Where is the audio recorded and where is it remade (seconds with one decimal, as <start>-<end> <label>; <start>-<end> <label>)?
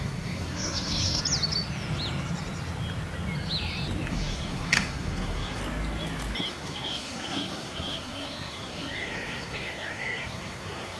0.0-1.2 remade; 1.2-4.1 recorded; 4.1-5.6 remade; 5.6-6.5 recorded; 6.5-11.0 remade